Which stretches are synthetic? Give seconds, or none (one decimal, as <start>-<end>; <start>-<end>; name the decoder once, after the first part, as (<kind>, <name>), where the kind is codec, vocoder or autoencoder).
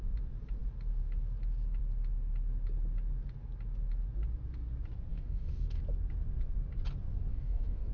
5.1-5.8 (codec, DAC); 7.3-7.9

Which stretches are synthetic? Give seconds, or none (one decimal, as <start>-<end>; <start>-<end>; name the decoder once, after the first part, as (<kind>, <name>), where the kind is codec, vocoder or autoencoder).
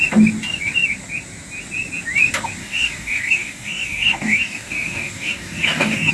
2.6-6.1 (codec, DAC)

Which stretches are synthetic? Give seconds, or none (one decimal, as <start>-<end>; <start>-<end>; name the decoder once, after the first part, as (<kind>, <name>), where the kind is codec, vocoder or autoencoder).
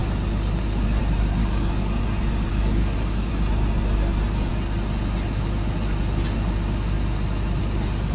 1.4-2.0 (codec, DAC); 2.5-3.3